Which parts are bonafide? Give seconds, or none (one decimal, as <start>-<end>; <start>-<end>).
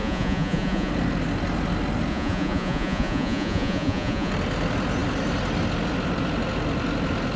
0.9-2.1; 4.3-7.4